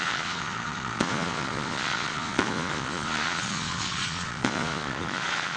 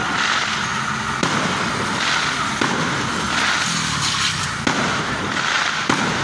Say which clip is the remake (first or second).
first